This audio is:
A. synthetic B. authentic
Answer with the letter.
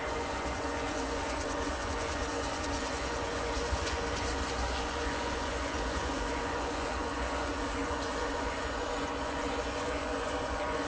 A